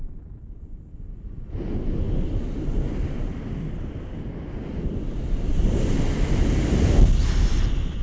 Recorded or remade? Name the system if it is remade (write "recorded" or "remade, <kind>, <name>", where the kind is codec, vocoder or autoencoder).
recorded